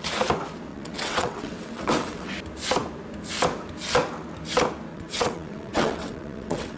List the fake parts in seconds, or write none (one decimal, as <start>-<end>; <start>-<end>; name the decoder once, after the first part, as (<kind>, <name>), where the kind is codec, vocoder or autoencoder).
0.7-2.3 (vocoder, WaveNeXt); 4.9-6.8